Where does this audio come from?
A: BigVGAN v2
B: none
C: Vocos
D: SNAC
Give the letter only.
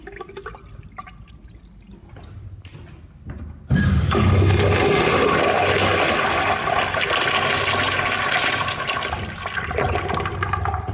B